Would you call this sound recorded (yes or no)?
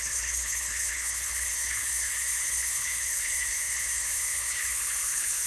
no